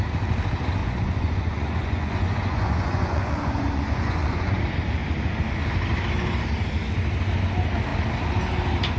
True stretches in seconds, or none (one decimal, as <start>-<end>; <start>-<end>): 0.0-0.8; 4.6-9.0